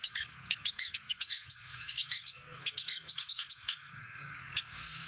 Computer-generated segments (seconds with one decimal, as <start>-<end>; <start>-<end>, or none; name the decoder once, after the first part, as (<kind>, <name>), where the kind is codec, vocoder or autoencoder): 0.0-5.1 (codec, SNAC)